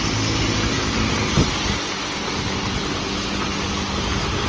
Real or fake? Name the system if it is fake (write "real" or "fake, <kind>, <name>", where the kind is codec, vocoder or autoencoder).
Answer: real